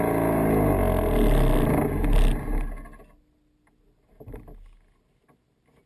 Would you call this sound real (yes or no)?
yes